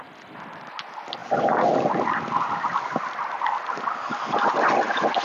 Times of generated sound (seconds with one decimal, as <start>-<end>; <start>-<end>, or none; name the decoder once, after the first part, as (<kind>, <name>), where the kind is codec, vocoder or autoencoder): none